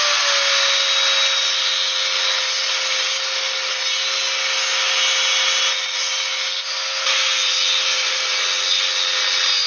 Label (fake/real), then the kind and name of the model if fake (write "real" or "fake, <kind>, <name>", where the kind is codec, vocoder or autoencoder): real